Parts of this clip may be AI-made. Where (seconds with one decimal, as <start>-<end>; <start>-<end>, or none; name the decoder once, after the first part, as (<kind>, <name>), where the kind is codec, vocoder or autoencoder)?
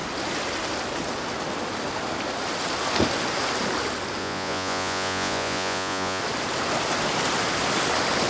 4.2-6.2 (vocoder, Vocos)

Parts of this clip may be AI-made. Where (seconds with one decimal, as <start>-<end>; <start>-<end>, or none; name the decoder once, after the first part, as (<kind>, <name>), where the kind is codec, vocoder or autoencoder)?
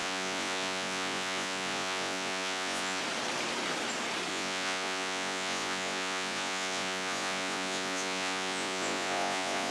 0.0-3.0 (vocoder, Vocos); 4.3-9.7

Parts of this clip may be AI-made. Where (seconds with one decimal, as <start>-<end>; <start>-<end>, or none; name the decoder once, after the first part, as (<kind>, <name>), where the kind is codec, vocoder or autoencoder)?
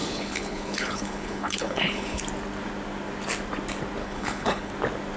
0.0-2.2 (codec, HILCodec); 4.0-4.7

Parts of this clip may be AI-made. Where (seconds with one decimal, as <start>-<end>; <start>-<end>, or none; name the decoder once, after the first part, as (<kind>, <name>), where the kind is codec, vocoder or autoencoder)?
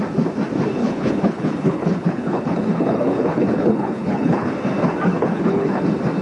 0.8-4.5 (codec, HILCodec); 5.1-5.8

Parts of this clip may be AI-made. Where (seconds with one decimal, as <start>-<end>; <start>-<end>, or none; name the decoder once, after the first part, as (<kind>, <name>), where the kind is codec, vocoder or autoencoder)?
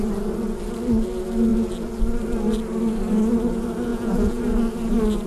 3.9-4.4 (vocoder, Vocos)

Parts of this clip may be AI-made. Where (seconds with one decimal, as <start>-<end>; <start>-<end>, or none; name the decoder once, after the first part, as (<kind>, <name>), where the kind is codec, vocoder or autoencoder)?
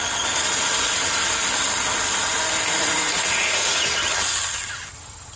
2.7-4.0 (vocoder, Vocos)